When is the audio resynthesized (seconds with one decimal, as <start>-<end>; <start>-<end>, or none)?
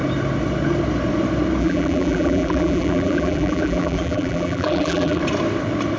1.6-5.2